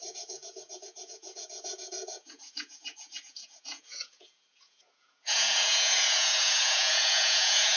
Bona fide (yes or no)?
no